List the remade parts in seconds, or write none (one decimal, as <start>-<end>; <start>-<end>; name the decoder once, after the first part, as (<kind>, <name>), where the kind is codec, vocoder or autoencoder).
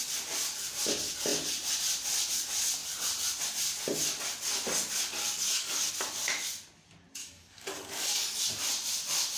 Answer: 5.2-5.9 (codec, DAC); 7.2-8.4